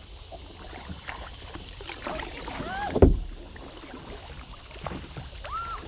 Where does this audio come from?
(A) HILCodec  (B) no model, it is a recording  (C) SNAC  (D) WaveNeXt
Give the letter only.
B